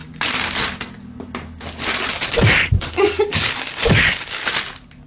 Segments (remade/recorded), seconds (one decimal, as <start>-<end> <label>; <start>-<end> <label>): 0.0-2.1 recorded; 2.1-4.4 remade; 4.4-5.1 recorded